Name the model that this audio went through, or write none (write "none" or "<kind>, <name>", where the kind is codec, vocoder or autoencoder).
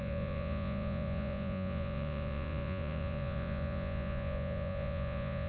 vocoder, Vocos